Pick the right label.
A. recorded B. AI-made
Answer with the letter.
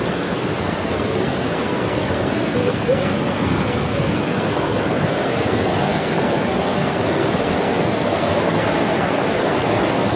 B